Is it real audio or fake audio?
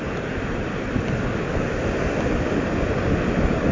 real